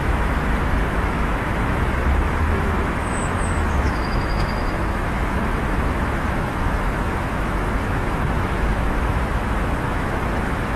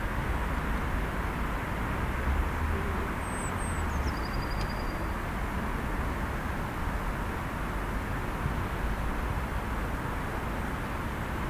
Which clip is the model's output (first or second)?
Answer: first